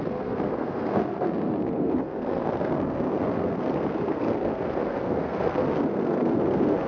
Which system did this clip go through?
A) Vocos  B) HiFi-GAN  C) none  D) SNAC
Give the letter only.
D